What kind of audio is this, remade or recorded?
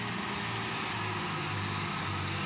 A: recorded